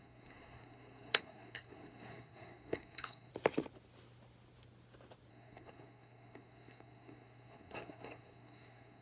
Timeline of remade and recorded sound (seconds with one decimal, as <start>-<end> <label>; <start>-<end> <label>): 0.0-3.3 remade; 3.3-5.3 recorded; 5.3-9.0 remade